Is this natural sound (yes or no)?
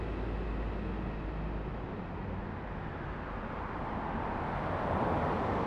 yes